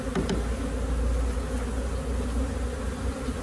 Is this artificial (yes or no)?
no